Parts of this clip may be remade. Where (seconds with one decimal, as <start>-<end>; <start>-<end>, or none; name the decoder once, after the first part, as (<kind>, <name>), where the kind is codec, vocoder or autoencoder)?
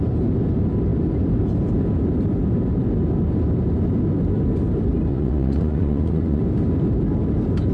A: 5.1-6.4 (vocoder, Vocos)